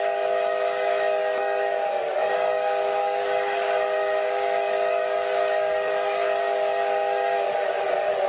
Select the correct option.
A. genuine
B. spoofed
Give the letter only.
B